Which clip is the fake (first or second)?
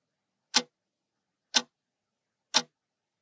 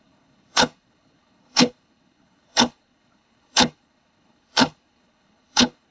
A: second